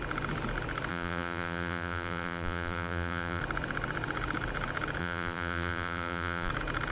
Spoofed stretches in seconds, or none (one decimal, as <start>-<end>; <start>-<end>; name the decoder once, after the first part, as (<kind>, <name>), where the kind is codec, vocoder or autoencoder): 0.9-3.4 (vocoder, BigVGAN v2); 5.0-6.5